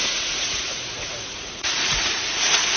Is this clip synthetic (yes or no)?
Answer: yes